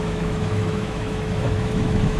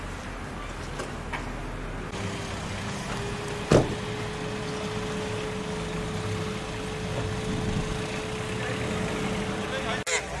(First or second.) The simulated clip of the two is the first